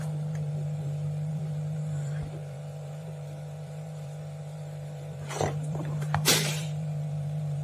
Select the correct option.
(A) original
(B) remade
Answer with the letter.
B